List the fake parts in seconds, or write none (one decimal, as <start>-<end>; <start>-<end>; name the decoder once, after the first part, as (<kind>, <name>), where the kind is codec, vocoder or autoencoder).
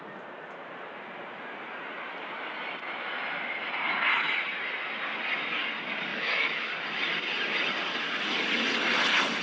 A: 6.1-6.7 (autoencoder, DAC-VAE)